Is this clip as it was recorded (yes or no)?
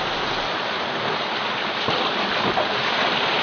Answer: no